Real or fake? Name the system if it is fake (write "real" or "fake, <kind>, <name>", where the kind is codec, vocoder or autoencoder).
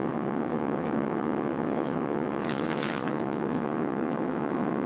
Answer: fake, vocoder, WaveNeXt